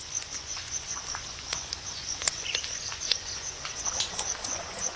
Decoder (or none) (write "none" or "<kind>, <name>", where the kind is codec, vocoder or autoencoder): vocoder, Vocos